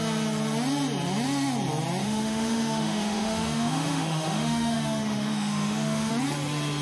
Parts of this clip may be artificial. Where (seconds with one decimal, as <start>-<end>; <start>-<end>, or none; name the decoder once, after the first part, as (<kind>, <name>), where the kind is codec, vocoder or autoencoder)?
2.0-6.1 (autoencoder, DAC-VAE)